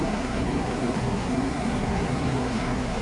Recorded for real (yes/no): no